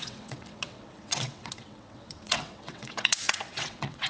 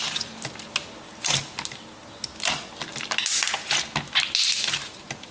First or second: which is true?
second